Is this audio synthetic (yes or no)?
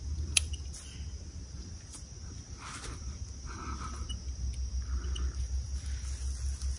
no